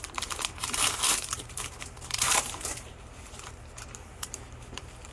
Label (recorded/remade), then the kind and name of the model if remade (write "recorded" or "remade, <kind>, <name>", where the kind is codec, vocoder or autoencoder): remade, vocoder, BigVGAN v2